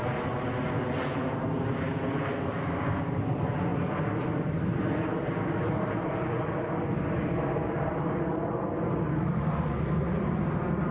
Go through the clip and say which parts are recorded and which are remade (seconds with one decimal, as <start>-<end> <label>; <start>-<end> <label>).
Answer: 0.0-10.9 recorded